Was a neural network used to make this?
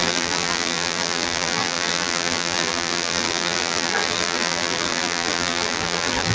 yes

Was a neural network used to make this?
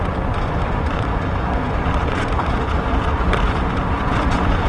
yes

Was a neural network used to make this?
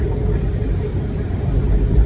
no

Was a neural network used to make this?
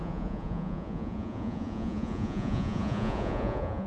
yes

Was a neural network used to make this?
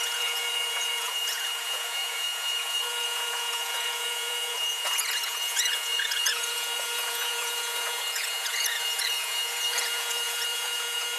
yes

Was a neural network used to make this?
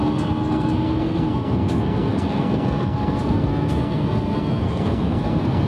yes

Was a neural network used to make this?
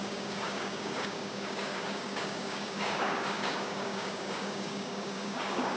yes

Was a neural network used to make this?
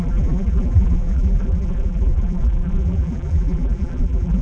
yes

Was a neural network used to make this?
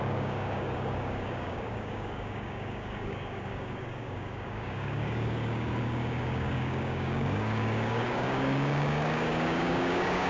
yes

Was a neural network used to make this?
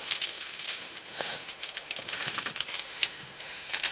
yes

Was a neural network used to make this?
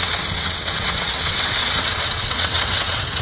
yes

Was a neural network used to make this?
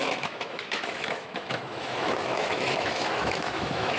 yes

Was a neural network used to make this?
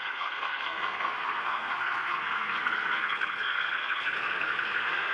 yes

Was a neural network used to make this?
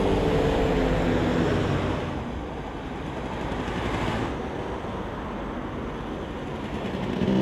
no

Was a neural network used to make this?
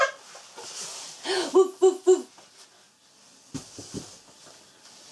no